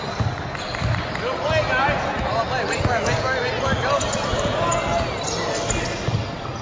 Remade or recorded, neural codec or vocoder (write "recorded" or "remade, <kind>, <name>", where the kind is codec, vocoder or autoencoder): recorded